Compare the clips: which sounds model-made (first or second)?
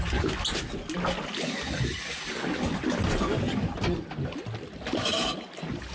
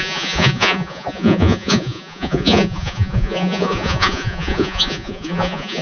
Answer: second